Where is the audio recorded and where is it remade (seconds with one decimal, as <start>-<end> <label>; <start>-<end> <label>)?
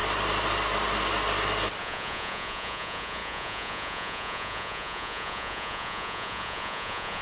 0.0-1.8 recorded; 1.8-7.2 remade